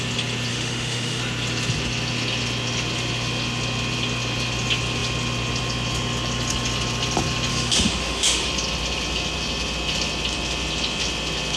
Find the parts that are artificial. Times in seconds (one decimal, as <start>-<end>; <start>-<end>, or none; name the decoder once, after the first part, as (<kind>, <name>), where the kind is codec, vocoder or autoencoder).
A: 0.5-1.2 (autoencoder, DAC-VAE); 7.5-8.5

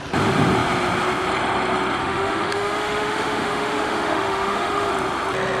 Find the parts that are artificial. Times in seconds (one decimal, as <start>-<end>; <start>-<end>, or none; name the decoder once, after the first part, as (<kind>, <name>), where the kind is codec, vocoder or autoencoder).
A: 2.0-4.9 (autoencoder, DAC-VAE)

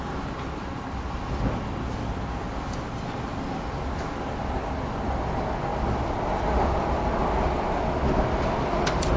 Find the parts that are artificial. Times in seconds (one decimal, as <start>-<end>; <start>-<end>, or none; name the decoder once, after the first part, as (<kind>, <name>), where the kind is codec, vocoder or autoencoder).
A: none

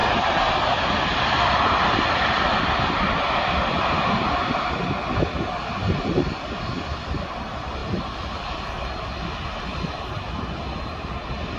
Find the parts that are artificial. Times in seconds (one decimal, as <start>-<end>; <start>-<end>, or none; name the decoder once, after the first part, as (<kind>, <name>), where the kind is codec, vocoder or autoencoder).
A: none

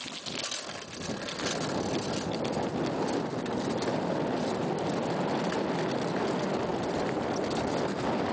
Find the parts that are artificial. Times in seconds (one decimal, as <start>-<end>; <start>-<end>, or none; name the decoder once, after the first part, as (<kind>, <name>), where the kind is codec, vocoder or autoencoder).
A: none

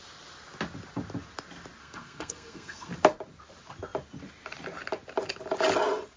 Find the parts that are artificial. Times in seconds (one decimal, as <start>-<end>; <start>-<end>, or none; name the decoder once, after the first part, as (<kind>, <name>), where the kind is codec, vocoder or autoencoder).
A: 1.8-2.9 (codec, SNAC)